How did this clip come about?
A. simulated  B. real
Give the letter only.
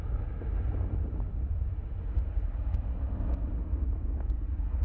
B